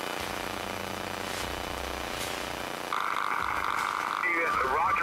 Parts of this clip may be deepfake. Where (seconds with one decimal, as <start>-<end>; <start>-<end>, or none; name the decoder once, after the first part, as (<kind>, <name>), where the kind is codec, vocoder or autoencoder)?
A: none